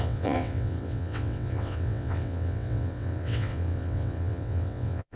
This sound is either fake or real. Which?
fake